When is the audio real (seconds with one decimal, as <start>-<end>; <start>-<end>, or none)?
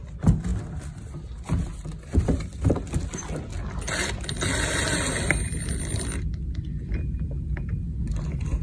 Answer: 0.0-8.6